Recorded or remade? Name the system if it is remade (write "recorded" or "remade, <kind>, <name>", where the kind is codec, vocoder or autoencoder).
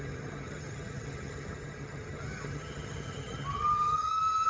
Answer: remade, vocoder, HiFi-GAN